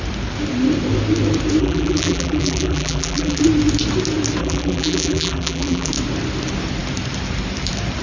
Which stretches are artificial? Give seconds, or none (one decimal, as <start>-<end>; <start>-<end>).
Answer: 1.6-3.4; 4.4-5.9

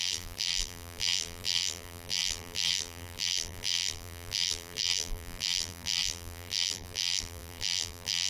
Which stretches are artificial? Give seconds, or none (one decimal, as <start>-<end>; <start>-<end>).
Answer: 0.0-8.3

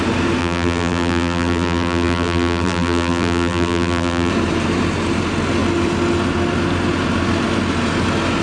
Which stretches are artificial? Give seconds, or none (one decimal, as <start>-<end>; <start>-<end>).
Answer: 0.4-4.3